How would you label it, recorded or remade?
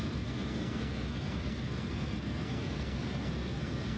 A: remade